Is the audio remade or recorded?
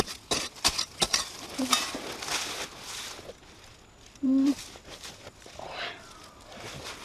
recorded